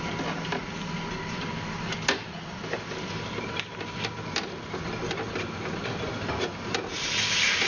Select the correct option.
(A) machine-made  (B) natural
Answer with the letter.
B